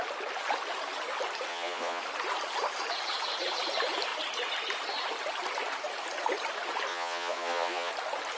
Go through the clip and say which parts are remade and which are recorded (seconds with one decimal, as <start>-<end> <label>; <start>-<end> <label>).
0.0-1.5 recorded; 1.5-2.0 remade; 2.0-6.9 recorded; 6.9-7.9 remade; 7.9-8.4 recorded